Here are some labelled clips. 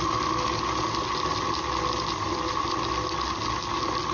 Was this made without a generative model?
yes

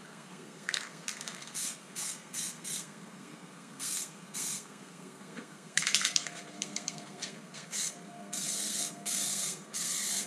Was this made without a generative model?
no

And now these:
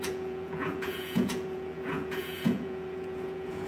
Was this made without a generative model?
no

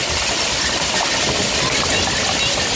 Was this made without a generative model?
yes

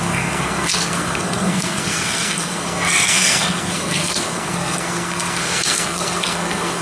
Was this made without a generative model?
no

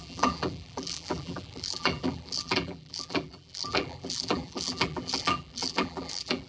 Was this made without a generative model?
no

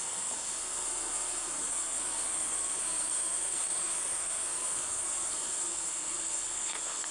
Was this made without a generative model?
no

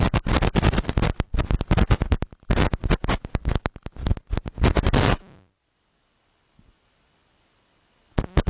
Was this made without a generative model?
yes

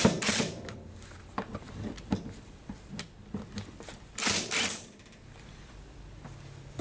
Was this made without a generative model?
yes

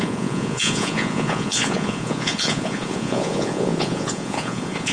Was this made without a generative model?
no